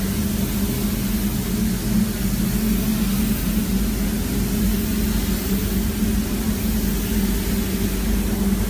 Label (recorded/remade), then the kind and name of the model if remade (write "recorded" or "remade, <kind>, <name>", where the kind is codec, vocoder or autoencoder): recorded